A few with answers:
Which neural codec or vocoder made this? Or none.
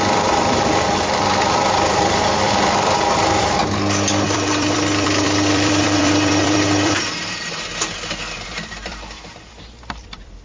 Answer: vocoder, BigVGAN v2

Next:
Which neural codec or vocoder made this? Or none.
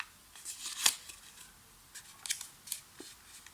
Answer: none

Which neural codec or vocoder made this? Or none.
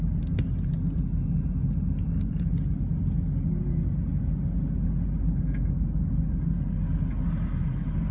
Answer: none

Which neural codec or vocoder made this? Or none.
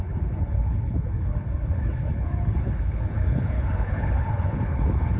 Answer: codec, HILCodec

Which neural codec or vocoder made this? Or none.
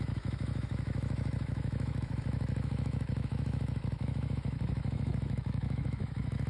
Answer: autoencoder, DAC-VAE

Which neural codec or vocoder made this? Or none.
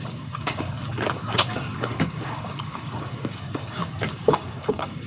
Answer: codec, DAC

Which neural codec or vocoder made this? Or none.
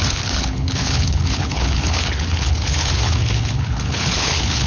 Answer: codec, HILCodec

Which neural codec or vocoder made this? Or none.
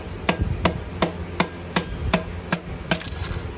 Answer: none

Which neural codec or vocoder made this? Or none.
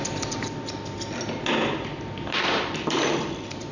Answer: vocoder, BigVGAN v2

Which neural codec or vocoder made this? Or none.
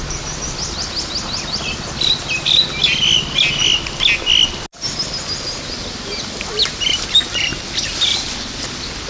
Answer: none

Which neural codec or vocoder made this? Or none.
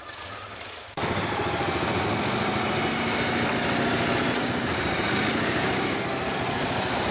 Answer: none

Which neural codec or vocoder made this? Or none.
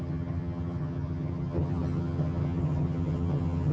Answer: vocoder, HiFi-GAN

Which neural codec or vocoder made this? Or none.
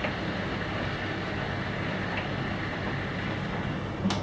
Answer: none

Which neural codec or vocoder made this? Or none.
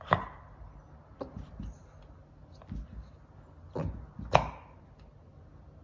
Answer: none